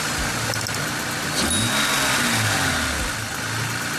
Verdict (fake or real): real